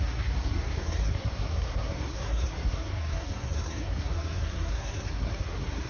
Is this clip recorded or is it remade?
remade